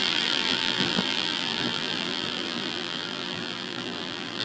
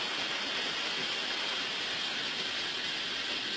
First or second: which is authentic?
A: second